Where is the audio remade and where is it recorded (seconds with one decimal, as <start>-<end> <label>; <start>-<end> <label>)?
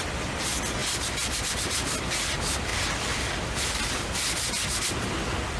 0.0-5.6 recorded